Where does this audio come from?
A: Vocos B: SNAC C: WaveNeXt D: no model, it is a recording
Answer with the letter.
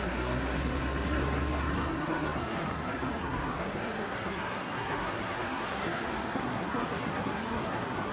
B